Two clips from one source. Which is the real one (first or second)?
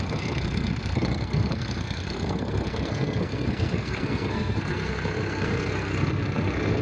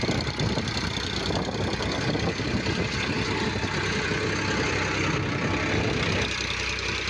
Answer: second